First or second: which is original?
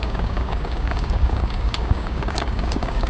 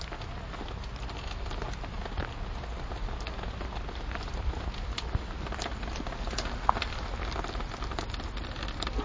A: second